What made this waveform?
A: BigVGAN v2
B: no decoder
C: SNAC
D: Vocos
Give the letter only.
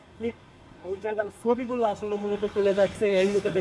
C